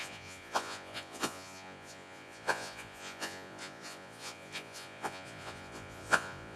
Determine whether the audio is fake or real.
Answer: fake